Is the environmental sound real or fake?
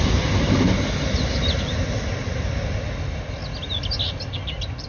real